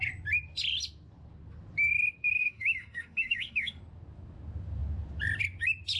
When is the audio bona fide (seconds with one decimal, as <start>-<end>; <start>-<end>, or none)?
0.0-2.4; 3.8-6.0